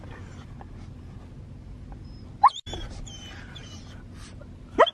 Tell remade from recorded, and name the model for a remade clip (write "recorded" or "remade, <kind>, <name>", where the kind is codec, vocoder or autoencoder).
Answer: recorded